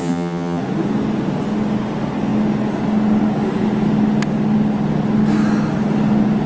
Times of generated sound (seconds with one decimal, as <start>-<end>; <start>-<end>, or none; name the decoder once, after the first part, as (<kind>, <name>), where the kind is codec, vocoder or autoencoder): 0.0-0.6 (vocoder, HiFi-GAN)